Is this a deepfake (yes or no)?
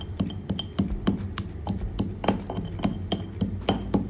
no